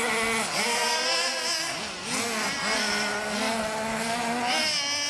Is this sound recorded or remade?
recorded